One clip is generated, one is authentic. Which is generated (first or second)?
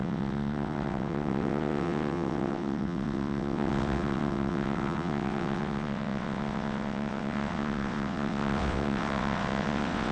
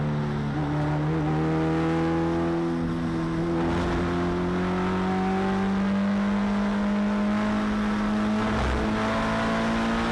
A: first